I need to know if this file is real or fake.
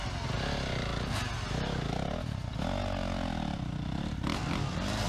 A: real